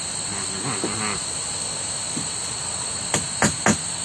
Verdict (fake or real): real